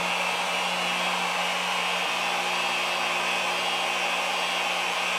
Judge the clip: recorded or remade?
recorded